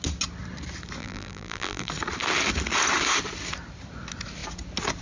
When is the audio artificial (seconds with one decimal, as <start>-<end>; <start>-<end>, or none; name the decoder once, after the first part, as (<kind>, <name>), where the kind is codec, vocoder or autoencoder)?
1.0-1.9 (vocoder, BigVGAN v2)